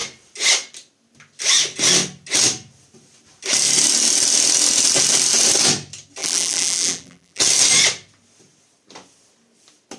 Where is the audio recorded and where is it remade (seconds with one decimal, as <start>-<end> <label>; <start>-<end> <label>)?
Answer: 0.0-6.2 recorded; 6.2-7.4 remade; 7.4-10.0 recorded

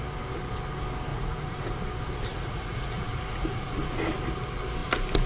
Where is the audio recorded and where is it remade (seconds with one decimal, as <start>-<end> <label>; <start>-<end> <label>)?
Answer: 0.0-1.1 recorded; 1.1-1.7 remade; 1.7-2.3 recorded; 2.3-3.8 remade; 3.8-5.3 recorded

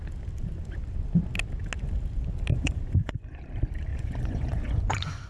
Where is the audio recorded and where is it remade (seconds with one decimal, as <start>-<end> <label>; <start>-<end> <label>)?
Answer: 0.0-2.5 recorded; 2.5-3.4 remade; 3.4-3.9 recorded; 3.9-5.3 remade

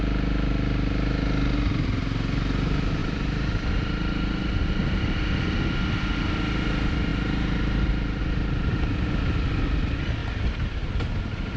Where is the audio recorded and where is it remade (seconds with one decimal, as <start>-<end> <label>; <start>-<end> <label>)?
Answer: 0.0-3.0 recorded; 3.0-4.6 remade; 4.6-7.1 recorded; 7.1-8.2 remade; 8.2-10.2 recorded; 10.2-10.9 remade; 10.9-11.6 recorded